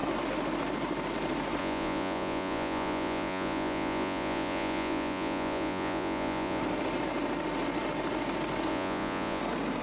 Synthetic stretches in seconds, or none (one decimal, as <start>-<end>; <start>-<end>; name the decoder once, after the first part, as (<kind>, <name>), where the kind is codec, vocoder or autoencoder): 1.6-6.6 (vocoder, Vocos); 8.7-9.4